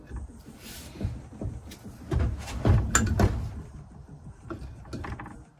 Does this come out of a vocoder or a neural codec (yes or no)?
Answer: no